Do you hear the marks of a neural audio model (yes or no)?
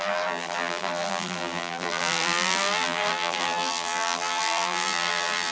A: yes